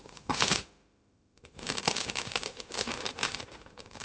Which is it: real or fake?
fake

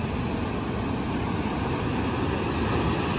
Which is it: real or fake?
real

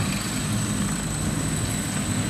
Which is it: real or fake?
real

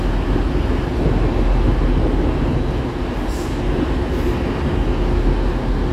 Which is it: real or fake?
real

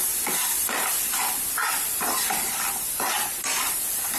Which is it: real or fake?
fake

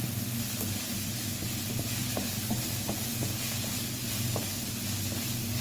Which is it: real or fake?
real